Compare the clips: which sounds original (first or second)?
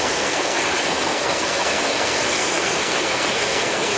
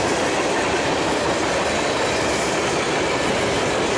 second